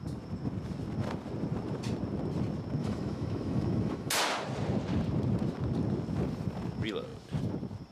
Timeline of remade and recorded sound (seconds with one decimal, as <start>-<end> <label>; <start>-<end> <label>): 0.0-2.8 recorded; 2.8-4.1 remade; 4.1-7.9 recorded